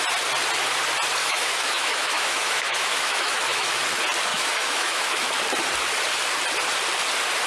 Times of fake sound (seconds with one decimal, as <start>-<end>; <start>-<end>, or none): 1.2-3.8; 4.3-5.3